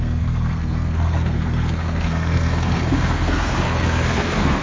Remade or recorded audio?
remade